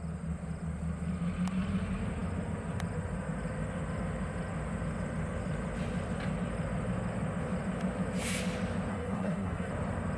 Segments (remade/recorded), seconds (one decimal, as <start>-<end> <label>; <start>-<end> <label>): 0.0-8.9 recorded; 8.9-9.7 remade; 9.7-10.2 recorded